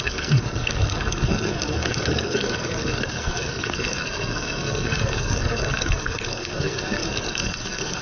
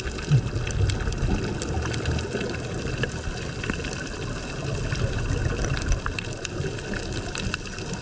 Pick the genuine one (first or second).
second